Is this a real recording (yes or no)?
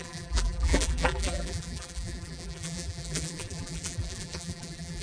no